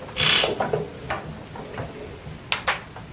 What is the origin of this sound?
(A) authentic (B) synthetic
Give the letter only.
A